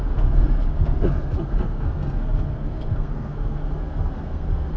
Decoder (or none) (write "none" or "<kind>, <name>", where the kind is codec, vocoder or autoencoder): codec, SNAC